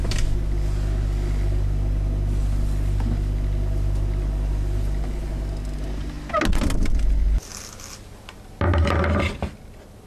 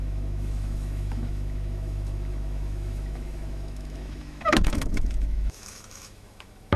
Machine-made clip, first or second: second